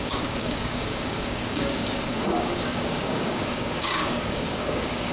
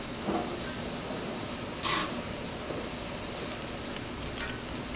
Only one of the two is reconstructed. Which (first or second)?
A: first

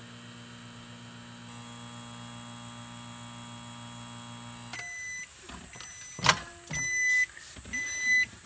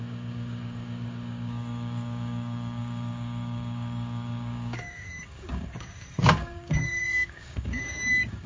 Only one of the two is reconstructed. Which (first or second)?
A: second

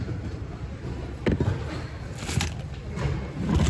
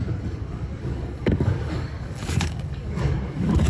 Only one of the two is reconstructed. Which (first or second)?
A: second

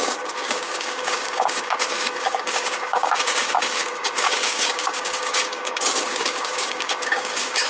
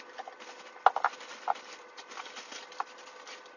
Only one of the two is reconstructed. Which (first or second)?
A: first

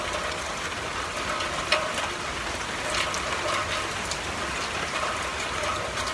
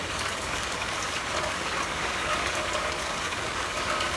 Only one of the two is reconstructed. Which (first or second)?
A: second